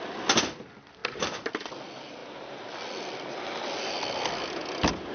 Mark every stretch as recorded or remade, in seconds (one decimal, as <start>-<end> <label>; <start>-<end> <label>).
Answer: 0.0-5.1 recorded